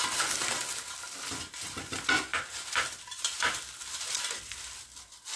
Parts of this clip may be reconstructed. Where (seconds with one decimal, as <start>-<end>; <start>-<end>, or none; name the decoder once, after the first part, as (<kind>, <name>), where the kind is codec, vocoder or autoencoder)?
none